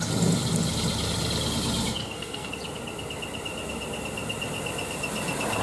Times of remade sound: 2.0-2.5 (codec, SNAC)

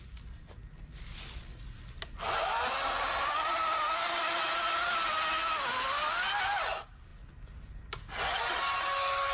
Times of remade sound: none